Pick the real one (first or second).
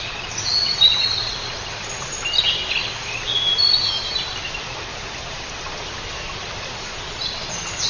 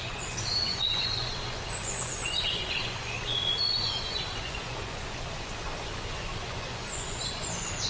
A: first